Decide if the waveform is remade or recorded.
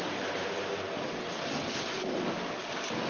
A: recorded